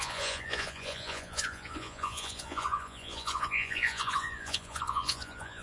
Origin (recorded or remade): remade